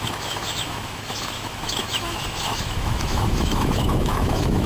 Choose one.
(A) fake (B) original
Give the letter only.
A